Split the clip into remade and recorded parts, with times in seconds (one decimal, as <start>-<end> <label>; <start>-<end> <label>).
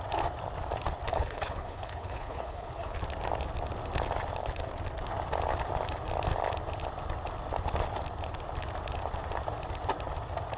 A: 0.0-1.1 recorded; 1.1-3.0 remade; 3.0-10.6 recorded